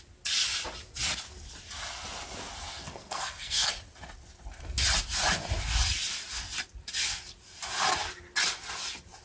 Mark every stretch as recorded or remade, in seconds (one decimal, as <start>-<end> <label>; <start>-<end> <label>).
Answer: 0.0-2.8 recorded; 2.8-3.7 remade; 3.7-9.2 recorded